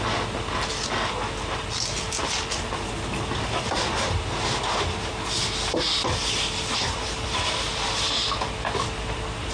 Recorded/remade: recorded